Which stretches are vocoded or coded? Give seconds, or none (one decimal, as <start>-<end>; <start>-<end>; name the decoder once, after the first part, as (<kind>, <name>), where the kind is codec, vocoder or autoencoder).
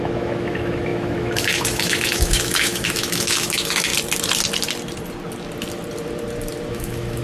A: 0.0-3.9 (autoencoder, DAC-VAE); 6.7-7.2